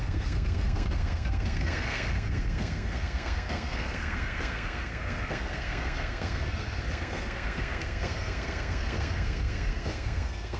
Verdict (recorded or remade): remade